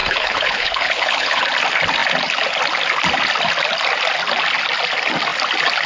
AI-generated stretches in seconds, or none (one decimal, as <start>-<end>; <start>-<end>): 0.0-1.4